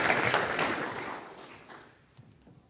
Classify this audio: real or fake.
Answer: real